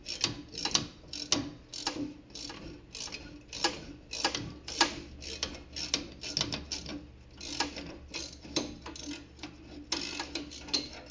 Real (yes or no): yes